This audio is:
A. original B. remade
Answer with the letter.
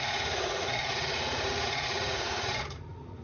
B